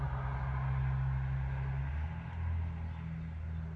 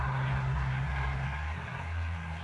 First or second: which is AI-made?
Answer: second